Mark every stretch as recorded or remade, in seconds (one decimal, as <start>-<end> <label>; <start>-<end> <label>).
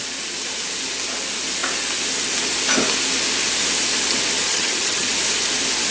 0.0-4.5 recorded; 4.5-5.1 remade; 5.1-5.9 recorded